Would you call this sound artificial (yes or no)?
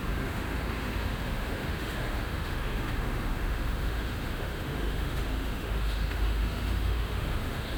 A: yes